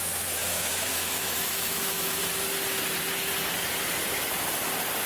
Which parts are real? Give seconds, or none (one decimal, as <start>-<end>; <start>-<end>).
2.2-5.1